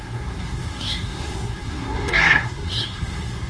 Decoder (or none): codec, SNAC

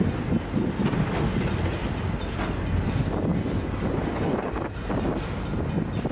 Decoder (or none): none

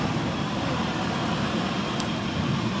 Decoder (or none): none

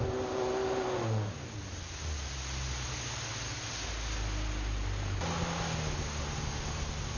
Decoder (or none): none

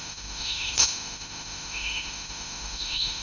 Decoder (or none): autoencoder, DAC-VAE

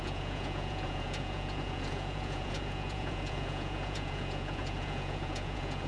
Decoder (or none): vocoder, Vocos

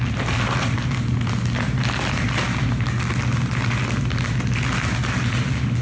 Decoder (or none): none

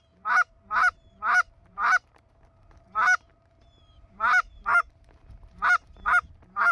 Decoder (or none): vocoder, BigVGAN v2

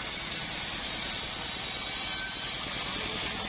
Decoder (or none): none